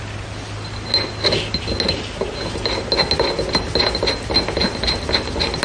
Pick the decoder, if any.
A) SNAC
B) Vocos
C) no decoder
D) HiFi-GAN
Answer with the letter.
C